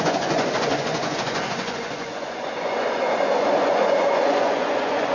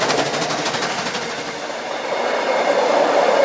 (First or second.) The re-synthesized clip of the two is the first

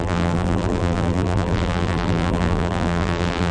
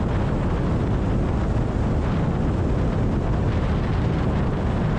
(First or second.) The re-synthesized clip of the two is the first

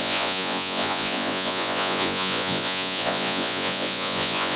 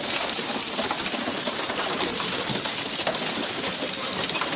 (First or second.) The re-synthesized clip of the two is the first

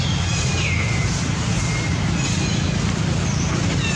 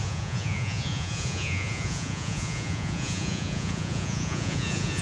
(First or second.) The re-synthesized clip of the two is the second